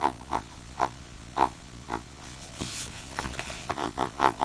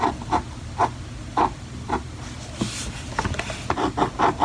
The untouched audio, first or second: second